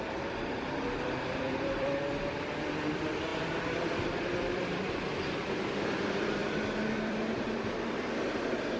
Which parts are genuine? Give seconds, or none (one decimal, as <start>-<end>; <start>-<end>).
6.4-6.9